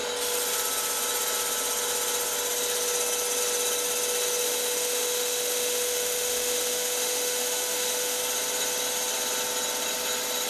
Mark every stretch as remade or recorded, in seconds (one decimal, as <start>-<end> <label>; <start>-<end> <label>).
0.0-4.4 recorded; 4.4-8.2 remade; 8.2-10.5 recorded